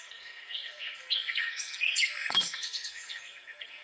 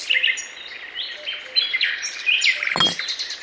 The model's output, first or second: first